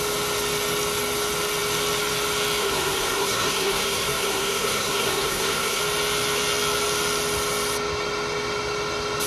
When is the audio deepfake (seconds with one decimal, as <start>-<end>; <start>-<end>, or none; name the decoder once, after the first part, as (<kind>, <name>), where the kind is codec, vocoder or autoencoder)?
2.6-5.8 (codec, SNAC)